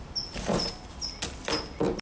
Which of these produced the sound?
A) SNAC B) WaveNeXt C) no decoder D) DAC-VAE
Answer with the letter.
C